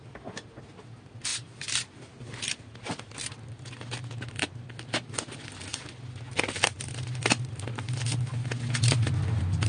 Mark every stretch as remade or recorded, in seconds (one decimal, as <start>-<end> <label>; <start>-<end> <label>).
0.0-9.7 recorded

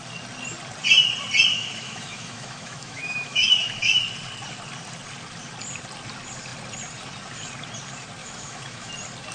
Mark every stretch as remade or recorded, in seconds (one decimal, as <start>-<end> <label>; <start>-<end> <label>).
0.0-1.5 recorded; 1.5-4.0 remade; 4.0-8.2 recorded; 8.2-8.9 remade; 8.9-9.3 recorded

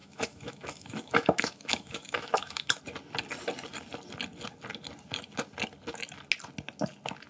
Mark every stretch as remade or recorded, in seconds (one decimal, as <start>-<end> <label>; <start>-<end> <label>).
0.0-2.8 remade; 2.8-7.3 recorded

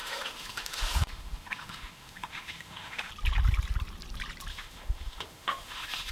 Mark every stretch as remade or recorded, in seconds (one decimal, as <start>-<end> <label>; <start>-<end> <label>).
0.0-3.1 remade; 3.1-4.5 recorded; 4.5-6.1 remade

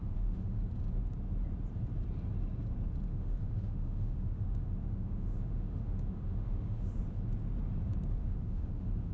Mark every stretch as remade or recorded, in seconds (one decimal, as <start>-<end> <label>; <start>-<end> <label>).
0.0-0.6 remade; 0.6-3.1 recorded; 3.1-7.0 remade; 7.0-8.2 recorded; 8.2-9.1 remade